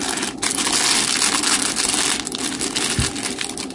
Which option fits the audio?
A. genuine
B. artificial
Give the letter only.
A